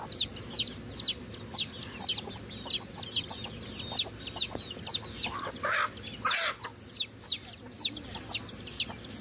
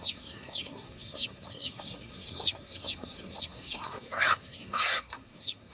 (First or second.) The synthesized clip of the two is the second